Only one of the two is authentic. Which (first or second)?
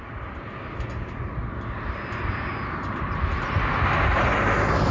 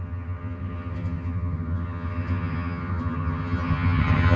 first